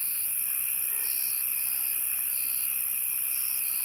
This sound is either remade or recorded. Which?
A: recorded